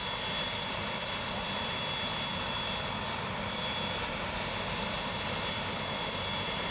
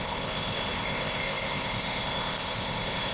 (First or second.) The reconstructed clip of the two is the second